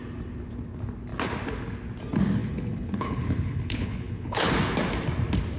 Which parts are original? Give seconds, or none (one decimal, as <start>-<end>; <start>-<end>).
0.0-2.4; 4.5-5.6